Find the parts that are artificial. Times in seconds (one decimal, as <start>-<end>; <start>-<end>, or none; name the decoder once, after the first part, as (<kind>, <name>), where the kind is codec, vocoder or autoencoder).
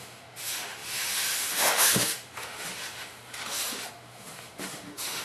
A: 0.0-5.2 (autoencoder, DAC-VAE)